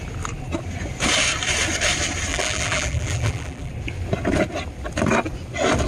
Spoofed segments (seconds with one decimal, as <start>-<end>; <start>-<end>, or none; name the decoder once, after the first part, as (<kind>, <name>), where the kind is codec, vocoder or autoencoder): 2.3-3.7 (vocoder, BigVGAN v2)